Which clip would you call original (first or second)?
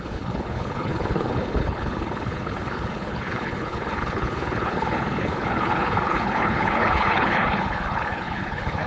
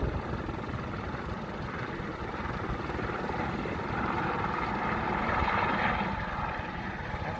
second